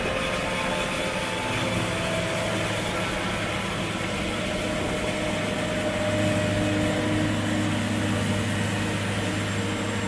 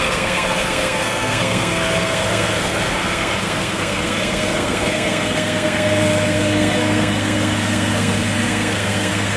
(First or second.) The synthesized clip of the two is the second